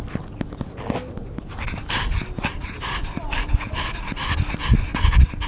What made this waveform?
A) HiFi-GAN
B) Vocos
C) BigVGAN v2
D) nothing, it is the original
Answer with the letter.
D